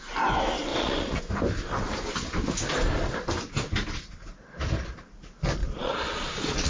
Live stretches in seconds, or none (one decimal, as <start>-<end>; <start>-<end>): 0.0-0.7; 1.2-5.6